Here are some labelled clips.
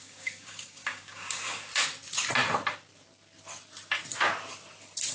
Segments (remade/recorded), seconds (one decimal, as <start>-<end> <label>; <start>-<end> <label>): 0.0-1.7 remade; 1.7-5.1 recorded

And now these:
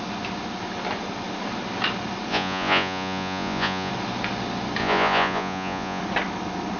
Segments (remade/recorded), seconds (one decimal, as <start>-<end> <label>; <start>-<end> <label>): 0.0-2.3 recorded; 2.3-3.9 remade; 3.9-4.8 recorded; 4.8-6.0 remade; 6.0-6.8 recorded

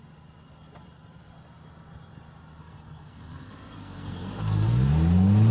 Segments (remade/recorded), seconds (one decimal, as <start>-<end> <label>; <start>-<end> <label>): 0.0-2.6 recorded; 2.6-4.9 remade; 4.9-5.5 recorded